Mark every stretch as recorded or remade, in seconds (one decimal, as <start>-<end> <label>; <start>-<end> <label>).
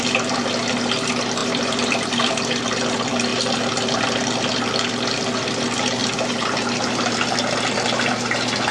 0.0-1.4 recorded; 1.4-2.3 remade; 2.3-3.3 recorded; 3.3-4.4 remade; 4.4-6.0 recorded; 6.0-7.4 remade; 7.4-8.7 recorded